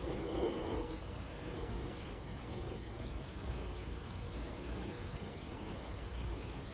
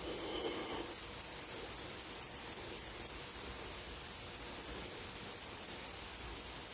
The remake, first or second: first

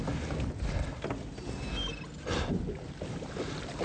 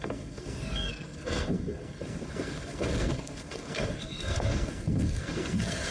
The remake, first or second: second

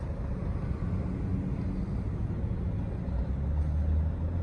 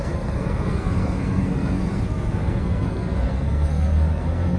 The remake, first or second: second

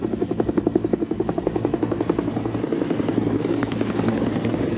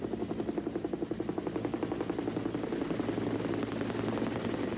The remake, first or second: first